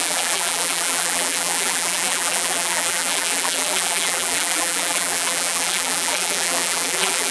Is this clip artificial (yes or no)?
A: yes